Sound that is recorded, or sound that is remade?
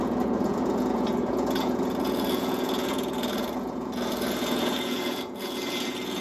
remade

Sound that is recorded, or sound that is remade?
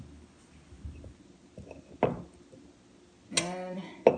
recorded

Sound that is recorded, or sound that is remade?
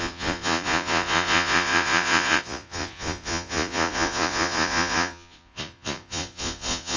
remade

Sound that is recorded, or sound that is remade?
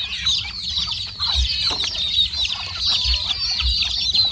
recorded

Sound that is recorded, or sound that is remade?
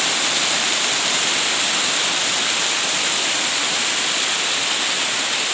recorded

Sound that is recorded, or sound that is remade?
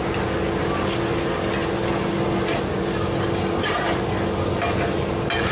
recorded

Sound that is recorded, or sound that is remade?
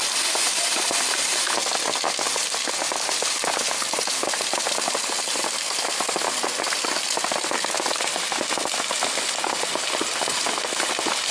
recorded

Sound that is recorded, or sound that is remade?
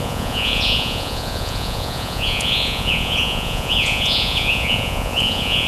remade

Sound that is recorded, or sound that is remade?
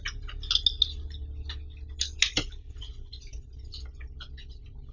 recorded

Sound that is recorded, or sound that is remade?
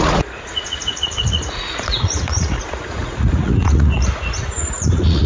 remade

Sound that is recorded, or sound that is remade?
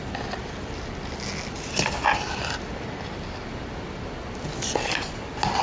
recorded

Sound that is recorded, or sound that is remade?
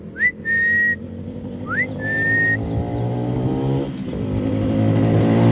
recorded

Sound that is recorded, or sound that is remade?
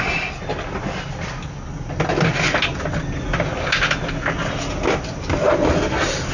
recorded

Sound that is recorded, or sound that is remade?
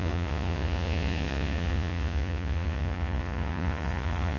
remade